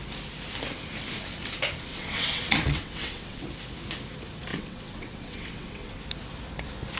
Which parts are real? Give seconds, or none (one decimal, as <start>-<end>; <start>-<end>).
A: 0.0-1.9; 3.4-4.5; 6.0-7.0